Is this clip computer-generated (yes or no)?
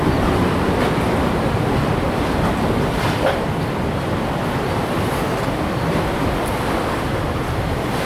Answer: yes